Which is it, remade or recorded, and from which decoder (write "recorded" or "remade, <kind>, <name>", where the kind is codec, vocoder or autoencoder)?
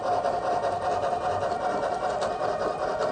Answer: recorded